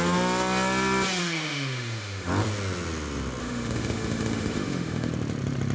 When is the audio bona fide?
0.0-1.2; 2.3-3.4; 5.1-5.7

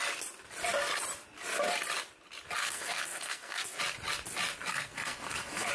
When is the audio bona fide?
0.0-2.6; 3.8-4.7

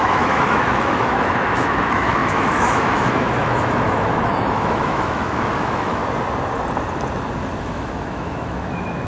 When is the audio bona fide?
6.0-7.6